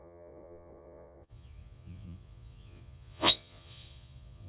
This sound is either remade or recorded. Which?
remade